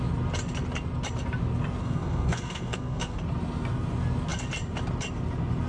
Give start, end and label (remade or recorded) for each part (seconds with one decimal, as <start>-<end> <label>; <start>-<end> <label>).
0.0-1.8 recorded; 1.8-3.2 remade; 3.2-5.7 recorded